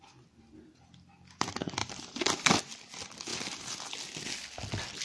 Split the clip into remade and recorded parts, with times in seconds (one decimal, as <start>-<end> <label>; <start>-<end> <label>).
0.0-1.8 recorded; 1.8-2.6 remade; 2.6-5.0 recorded